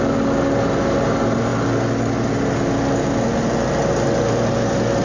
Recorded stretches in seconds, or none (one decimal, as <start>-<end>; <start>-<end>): 0.0-5.0